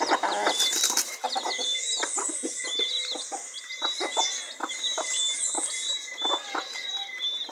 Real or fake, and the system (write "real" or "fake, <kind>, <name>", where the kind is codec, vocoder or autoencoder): real